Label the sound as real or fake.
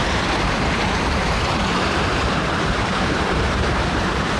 fake